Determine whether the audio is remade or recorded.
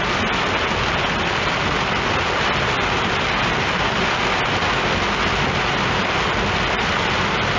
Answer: recorded